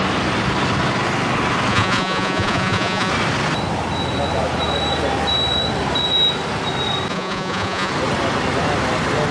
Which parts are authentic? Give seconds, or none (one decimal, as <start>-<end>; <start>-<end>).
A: 0.0-1.7; 3.1-7.1; 7.9-9.3